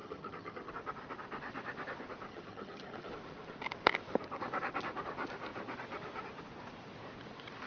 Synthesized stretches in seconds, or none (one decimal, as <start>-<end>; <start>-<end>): 0.0-0.7; 2.3-3.1